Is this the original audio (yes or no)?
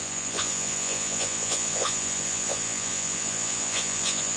no